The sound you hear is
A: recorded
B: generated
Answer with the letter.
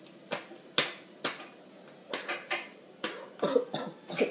A